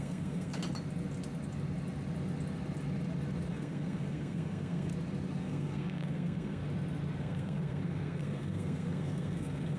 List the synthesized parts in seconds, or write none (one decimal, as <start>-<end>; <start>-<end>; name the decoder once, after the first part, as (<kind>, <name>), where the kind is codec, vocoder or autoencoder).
0.0-0.6 (codec, SNAC); 3.5-4.9; 5.4-6.6; 7.2-9.8